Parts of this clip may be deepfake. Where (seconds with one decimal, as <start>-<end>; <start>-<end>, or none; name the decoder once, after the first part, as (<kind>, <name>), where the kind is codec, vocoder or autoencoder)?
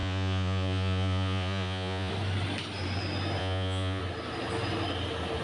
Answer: 0.0-2.1 (vocoder, Vocos); 3.4-4.0